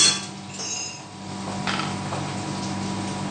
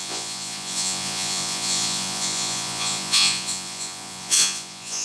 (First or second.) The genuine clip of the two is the first